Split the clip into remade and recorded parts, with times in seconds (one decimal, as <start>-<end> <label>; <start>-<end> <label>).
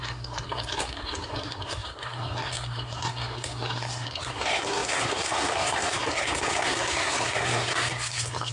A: 0.0-8.5 remade